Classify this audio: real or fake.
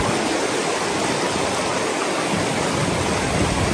real